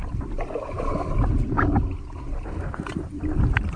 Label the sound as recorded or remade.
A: recorded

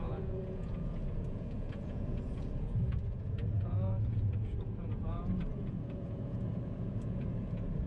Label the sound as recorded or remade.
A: remade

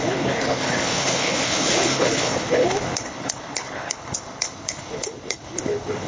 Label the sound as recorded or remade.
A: remade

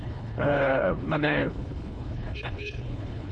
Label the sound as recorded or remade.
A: remade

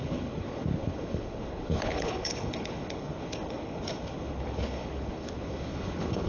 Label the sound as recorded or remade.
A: remade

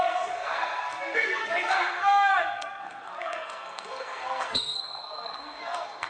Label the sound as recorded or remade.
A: remade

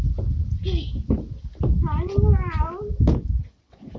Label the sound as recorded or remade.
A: recorded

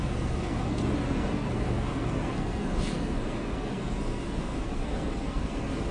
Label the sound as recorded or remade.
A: remade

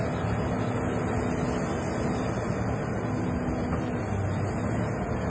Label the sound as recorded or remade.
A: recorded